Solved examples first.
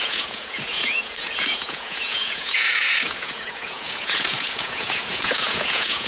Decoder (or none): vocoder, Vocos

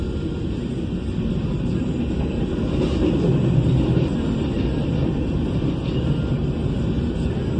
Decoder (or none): none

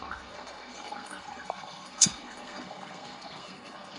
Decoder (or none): codec, SNAC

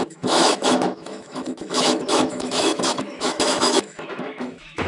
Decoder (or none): autoencoder, DAC-VAE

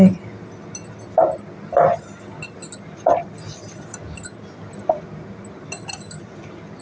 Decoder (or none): none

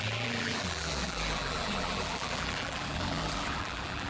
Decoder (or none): vocoder, BigVGAN v2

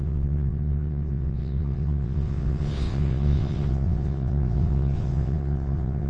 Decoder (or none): vocoder, WaveNeXt